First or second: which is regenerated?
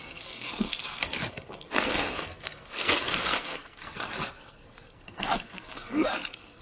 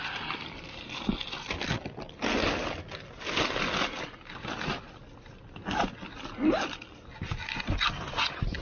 first